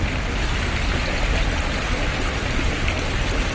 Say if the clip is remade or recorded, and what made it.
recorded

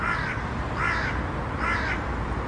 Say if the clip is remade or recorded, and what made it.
recorded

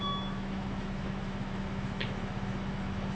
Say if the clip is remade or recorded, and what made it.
remade, autoencoder, DAC-VAE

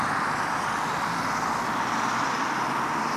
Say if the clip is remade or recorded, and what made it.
recorded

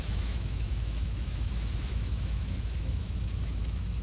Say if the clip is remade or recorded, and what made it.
remade, autoencoder, DAC-VAE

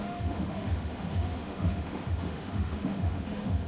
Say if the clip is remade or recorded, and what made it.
remade, autoencoder, DAC-VAE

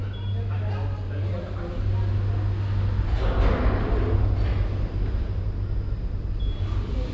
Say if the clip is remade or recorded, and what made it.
recorded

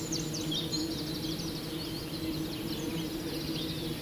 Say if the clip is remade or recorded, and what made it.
recorded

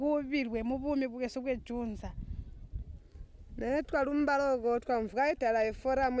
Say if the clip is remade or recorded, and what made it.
recorded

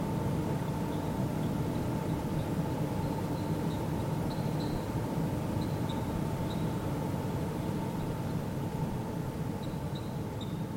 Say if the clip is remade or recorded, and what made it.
recorded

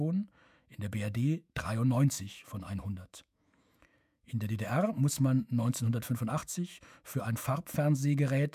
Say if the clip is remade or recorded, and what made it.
remade, autoencoder, DAC-VAE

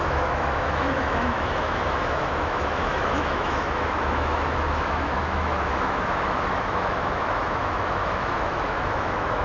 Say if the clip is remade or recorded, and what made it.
remade, autoencoder, DAC-VAE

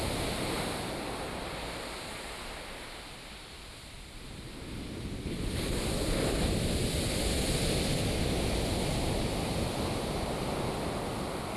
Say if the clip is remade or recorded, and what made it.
recorded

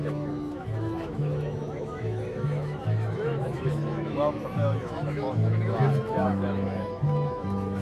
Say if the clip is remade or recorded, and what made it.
remade, autoencoder, DAC-VAE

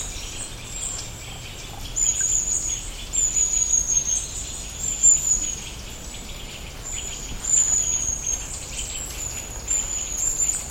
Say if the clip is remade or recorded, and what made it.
recorded